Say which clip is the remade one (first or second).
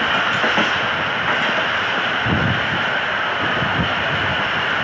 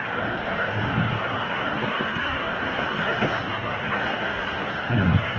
second